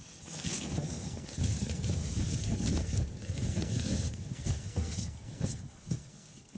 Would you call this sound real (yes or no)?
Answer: no